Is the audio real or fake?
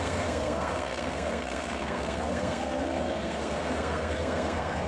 fake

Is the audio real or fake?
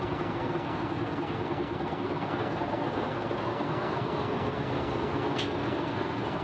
fake